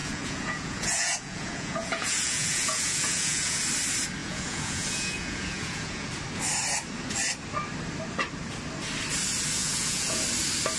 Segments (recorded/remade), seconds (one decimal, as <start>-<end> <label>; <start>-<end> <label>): 0.0-3.6 remade; 3.6-4.2 recorded; 4.2-6.1 remade; 6.1-9.6 recorded; 9.6-10.2 remade; 10.2-10.8 recorded